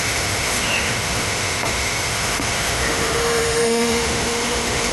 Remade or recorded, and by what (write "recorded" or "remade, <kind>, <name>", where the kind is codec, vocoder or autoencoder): remade, autoencoder, DAC-VAE